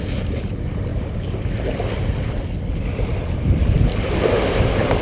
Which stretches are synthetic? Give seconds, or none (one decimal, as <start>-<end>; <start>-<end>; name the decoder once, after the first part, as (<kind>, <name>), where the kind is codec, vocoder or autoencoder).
0.9-3.9 (vocoder, BigVGAN v2)